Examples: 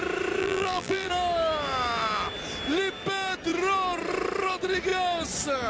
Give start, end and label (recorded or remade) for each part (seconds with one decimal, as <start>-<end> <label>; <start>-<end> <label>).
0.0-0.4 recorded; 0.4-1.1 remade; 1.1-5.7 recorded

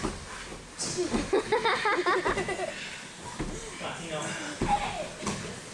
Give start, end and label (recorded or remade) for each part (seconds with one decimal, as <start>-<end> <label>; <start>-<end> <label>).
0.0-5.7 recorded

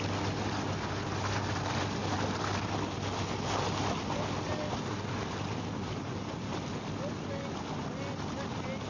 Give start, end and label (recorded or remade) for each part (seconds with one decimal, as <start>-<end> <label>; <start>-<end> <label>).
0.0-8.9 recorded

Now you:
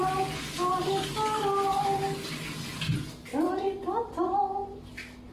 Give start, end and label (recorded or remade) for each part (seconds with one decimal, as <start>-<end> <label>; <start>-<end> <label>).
0.0-3.3 recorded; 3.3-4.4 remade; 4.4-5.3 recorded

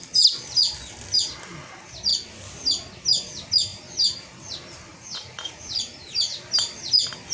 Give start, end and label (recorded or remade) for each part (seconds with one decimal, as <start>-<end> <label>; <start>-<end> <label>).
0.0-4.9 recorded; 4.9-5.8 remade; 5.8-7.3 recorded

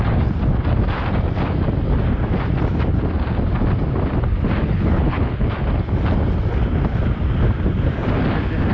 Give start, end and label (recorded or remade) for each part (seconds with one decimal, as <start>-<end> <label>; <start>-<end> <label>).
0.0-4.6 recorded; 4.6-5.5 remade; 5.5-8.7 recorded